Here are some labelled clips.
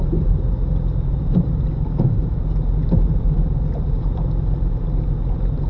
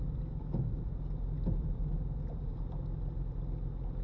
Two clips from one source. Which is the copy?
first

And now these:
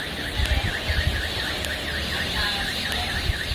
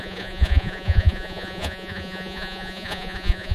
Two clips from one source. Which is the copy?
second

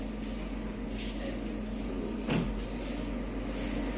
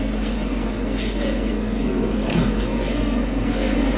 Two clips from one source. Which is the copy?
second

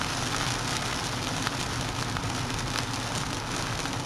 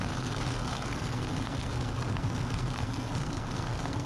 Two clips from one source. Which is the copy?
second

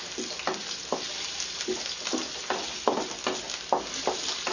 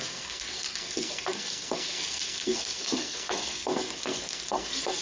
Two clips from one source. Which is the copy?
second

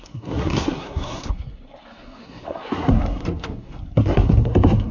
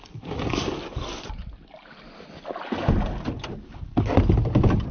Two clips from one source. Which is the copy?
first